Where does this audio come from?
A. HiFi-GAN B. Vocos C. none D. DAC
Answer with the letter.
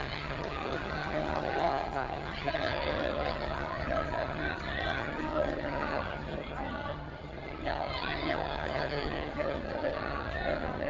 A